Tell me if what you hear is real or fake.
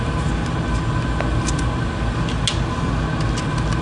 real